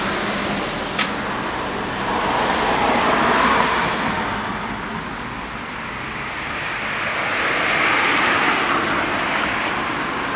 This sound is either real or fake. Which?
real